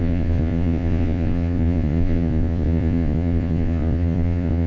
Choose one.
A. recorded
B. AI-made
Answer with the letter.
B